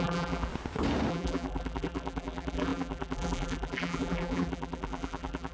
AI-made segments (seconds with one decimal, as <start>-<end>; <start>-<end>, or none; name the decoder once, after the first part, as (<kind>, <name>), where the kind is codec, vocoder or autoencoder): 0.0-0.5 (vocoder, BigVGAN v2); 1.1-5.5